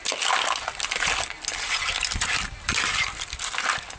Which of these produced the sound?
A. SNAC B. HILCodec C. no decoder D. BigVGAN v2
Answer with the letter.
C